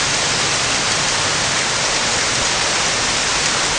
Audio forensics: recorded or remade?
recorded